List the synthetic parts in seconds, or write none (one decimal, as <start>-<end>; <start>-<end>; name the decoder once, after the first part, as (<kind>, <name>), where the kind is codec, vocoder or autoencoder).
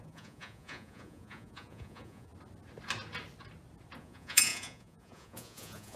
0.0-2.3 (vocoder, Vocos); 4.0-6.0